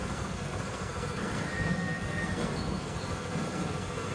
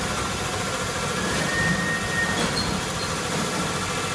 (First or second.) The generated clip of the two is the first